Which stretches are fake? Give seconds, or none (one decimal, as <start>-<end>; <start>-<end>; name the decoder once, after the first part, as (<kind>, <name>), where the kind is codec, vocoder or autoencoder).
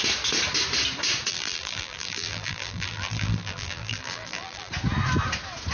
1.3-4.7 (vocoder, BigVGAN v2)